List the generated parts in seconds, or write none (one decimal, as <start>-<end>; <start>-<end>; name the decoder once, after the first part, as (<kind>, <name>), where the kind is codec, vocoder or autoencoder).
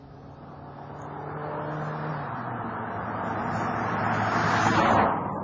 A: none